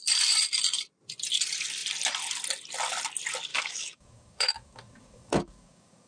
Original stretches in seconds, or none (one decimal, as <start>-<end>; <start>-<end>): 0.0-3.5